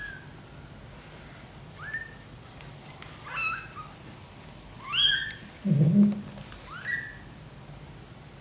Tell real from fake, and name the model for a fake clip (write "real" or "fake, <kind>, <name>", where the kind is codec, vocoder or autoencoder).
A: real